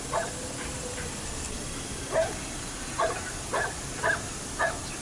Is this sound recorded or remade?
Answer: recorded